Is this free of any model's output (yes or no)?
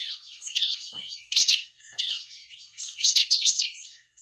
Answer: no